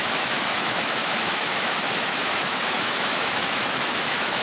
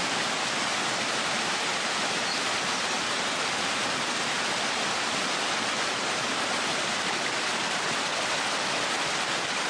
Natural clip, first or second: second